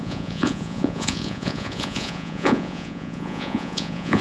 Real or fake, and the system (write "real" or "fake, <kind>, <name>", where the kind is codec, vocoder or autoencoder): fake, vocoder, Vocos